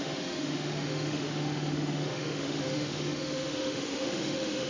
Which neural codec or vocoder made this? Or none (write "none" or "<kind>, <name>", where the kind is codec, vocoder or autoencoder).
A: autoencoder, DAC-VAE